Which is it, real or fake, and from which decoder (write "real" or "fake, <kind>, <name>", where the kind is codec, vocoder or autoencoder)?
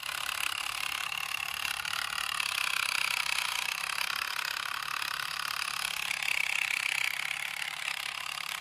fake, vocoder, BigVGAN v2